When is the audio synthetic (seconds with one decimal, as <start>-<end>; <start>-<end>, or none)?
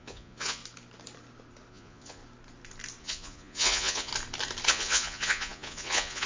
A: 0.0-0.6; 1.7-2.2; 3.0-4.1; 4.7-6.3